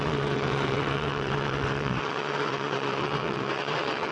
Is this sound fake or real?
fake